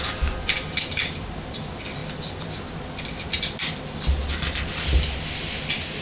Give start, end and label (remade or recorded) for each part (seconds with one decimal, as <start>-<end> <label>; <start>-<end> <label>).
0.0-6.0 recorded